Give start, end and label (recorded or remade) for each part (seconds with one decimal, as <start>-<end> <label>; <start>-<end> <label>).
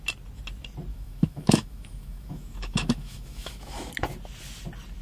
0.0-0.9 recorded; 0.9-3.9 remade; 3.9-5.0 recorded